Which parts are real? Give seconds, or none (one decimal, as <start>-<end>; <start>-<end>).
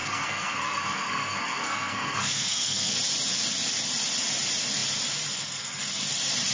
2.9-6.5